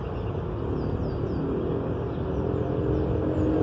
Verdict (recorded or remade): recorded